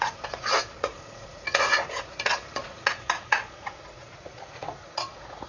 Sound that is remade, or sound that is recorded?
remade